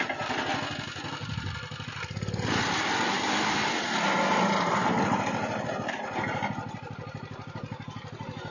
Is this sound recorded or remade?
recorded